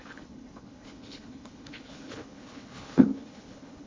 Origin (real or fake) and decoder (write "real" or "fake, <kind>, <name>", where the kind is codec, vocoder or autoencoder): fake, codec, HILCodec